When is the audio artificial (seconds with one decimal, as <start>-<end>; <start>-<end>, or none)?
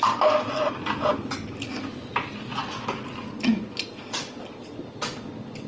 none